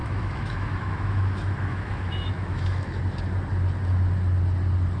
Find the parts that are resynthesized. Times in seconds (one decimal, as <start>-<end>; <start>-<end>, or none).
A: 0.0-3.0